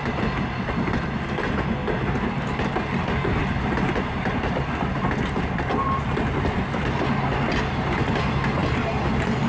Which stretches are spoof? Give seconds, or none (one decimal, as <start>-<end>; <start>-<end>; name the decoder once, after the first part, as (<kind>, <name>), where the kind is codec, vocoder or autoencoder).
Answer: none